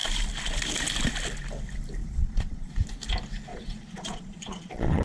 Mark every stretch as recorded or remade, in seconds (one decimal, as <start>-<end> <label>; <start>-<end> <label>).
0.0-2.0 recorded; 2.0-2.8 remade; 2.8-3.5 recorded; 3.5-5.0 remade